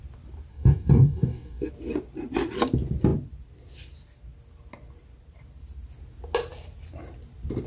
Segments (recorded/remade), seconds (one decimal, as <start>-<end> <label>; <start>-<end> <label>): 0.0-0.5 recorded; 0.5-1.7 remade; 1.7-7.7 recorded